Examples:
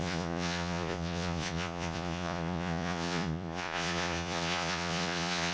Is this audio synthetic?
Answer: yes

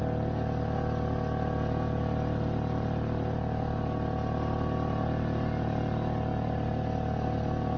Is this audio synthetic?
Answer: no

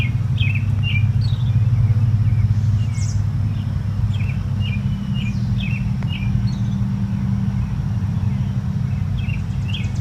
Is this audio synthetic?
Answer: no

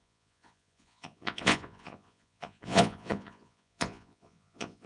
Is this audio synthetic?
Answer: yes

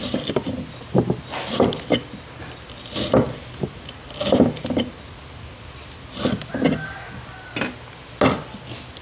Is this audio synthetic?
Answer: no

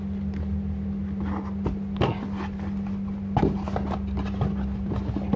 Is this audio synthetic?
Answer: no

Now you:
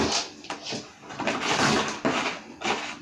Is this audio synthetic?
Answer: no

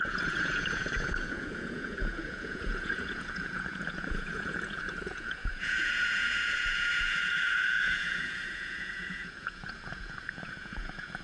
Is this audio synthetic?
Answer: yes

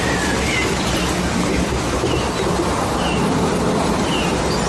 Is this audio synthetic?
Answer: no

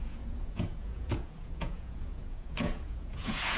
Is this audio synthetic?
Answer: yes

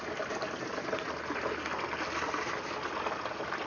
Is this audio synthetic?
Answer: no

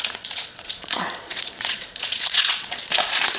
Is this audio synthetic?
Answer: yes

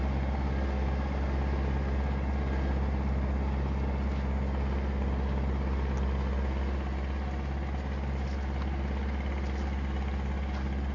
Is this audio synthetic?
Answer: no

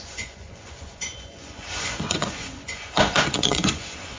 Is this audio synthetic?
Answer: yes